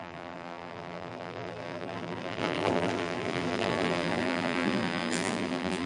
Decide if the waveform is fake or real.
fake